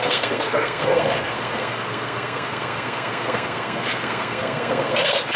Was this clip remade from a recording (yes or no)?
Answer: yes